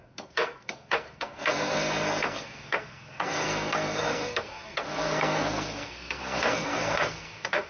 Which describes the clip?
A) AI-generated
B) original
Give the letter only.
A